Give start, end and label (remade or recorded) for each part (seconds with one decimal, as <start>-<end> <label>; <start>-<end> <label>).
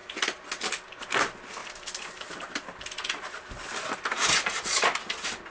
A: 0.0-5.5 recorded